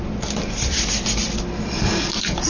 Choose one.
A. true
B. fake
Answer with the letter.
A